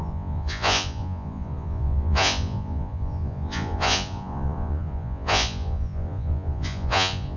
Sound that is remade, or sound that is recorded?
remade